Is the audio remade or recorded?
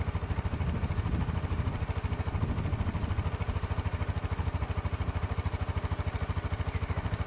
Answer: recorded